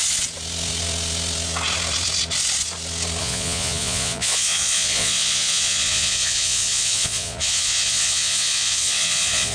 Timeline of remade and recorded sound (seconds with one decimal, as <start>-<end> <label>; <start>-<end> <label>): 0.0-3.2 recorded; 3.2-9.5 remade